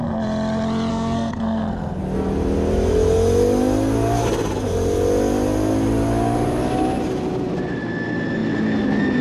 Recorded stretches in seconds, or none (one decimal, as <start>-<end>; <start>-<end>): 0.0-0.9; 2.0-9.2

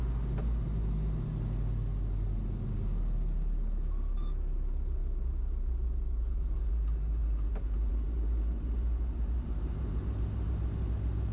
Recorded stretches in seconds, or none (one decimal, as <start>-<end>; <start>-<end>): 0.0-11.3

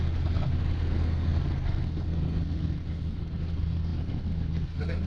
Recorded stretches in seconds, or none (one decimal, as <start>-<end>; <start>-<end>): none

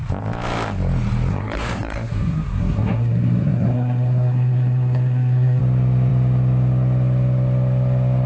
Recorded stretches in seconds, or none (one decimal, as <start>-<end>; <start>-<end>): 0.0-1.3; 5.6-8.3